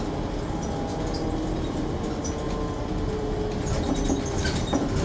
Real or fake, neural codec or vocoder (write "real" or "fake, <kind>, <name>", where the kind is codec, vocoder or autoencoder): real